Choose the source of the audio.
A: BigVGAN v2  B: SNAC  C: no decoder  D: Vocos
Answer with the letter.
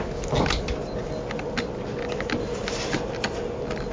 C